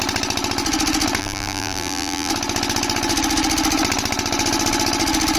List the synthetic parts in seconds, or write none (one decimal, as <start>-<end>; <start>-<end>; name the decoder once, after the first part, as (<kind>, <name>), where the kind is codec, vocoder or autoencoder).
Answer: 1.2-2.3 (vocoder, BigVGAN v2)